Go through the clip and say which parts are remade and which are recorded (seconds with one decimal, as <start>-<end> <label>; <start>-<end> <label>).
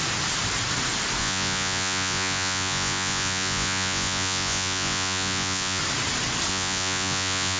0.0-1.2 recorded; 1.2-5.8 remade; 5.8-6.5 recorded; 6.5-7.6 remade